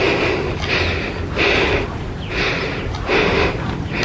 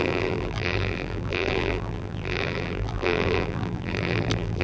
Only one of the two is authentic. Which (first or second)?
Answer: first